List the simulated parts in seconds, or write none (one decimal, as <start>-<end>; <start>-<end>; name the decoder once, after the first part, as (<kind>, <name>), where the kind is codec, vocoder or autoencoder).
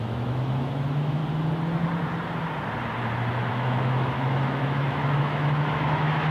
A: 0.0-1.2 (autoencoder, DAC-VAE); 3.5-6.3